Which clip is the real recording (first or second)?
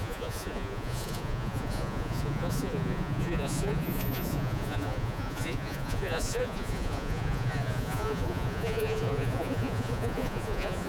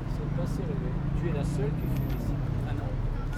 second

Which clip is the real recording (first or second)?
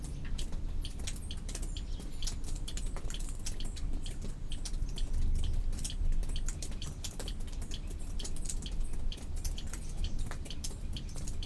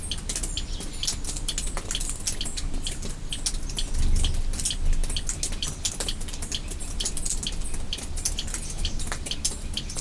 second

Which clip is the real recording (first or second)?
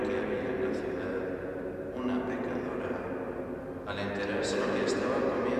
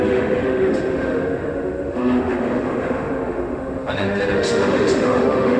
first